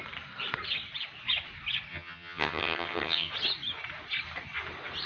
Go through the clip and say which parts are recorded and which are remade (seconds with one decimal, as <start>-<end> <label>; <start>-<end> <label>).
0.0-1.9 recorded; 1.9-3.3 remade; 3.3-5.1 recorded